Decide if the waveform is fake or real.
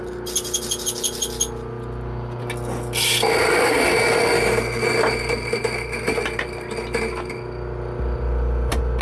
real